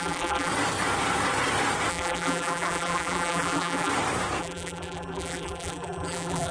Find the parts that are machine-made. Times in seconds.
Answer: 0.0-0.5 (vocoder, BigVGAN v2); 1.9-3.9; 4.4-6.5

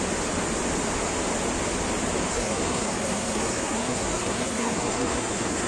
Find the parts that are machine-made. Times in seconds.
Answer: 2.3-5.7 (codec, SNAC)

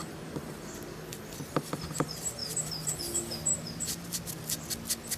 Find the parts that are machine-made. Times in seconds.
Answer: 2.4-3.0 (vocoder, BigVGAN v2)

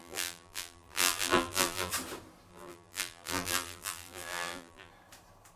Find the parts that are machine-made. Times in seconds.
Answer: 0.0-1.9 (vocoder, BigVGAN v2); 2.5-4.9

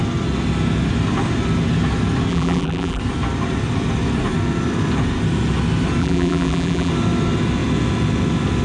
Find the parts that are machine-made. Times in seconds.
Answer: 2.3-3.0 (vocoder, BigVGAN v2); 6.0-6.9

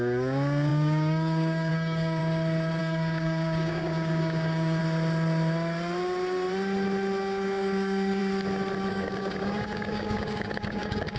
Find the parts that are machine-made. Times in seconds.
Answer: 0.0-2.2 (codec, DAC); 2.8-4.8; 7.2-8.2; 8.9-11.2